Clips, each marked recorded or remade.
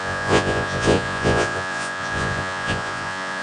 remade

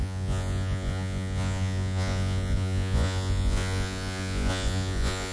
remade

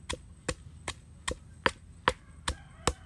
recorded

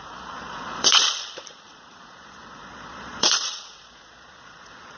remade